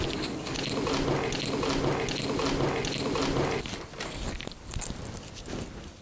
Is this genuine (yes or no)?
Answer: yes